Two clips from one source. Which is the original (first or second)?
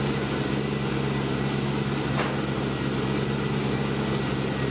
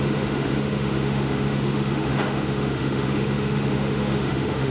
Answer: first